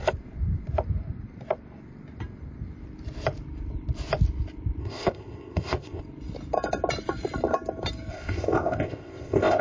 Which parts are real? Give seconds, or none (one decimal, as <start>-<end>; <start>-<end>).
0.0-4.8; 6.0-8.1